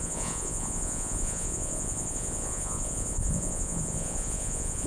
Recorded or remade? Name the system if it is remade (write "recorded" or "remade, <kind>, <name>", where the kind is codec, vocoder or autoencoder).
remade, vocoder, Vocos